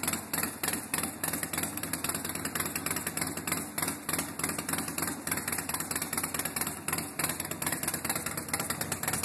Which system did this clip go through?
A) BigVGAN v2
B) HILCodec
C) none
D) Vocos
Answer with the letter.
C